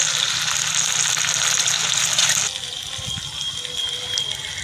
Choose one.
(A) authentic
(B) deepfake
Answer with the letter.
A